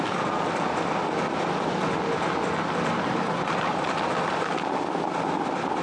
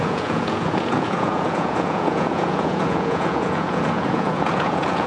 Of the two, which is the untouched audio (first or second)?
first